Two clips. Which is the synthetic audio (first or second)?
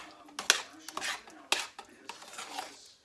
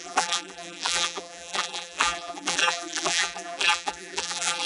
second